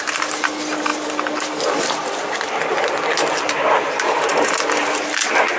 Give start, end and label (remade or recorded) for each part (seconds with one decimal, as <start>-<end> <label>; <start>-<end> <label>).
0.0-5.6 recorded